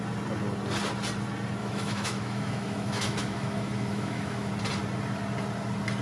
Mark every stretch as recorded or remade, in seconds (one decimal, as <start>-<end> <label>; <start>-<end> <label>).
0.0-1.6 recorded; 1.6-4.5 remade; 4.5-6.0 recorded